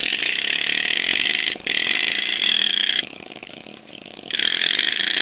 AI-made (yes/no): yes